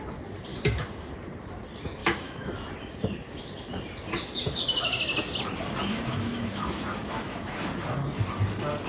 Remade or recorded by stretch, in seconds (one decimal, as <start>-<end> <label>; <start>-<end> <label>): 0.0-0.5 recorded; 0.5-1.1 remade; 1.1-2.0 recorded; 2.0-2.7 remade; 2.7-6.1 recorded; 6.1-7.7 remade; 7.7-8.9 recorded